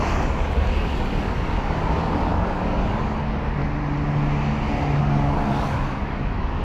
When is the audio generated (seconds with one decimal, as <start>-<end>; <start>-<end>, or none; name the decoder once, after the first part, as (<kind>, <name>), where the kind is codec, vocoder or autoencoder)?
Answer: 0.0-3.6 (codec, DAC); 5.0-6.6